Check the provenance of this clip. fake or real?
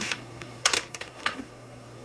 fake